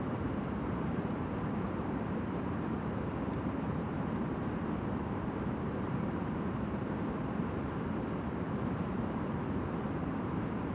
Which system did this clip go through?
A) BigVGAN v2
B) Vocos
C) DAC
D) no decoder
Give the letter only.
A